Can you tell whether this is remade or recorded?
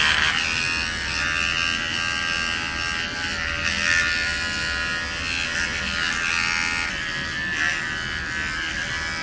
recorded